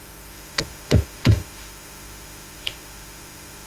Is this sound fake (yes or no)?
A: yes